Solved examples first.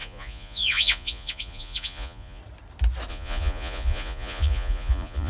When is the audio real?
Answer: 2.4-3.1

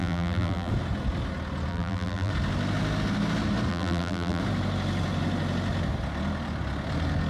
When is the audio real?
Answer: 0.7-1.7; 2.3-3.7; 4.4-7.3

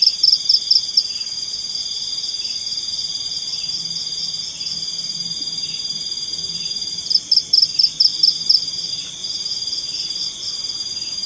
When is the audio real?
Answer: 0.0-11.3